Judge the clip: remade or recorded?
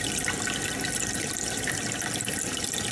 recorded